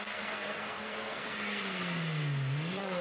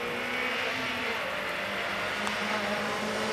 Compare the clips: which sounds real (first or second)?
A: second